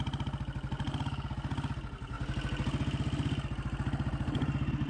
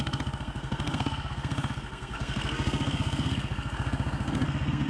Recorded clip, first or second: first